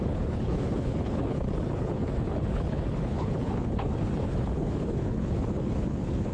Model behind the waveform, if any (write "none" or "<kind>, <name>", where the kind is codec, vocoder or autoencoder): codec, HILCodec